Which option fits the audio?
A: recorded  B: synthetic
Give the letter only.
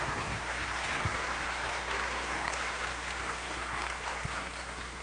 B